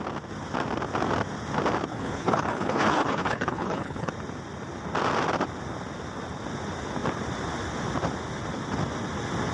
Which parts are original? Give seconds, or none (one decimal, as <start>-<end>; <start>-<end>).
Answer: 0.0-1.9; 4.1-9.5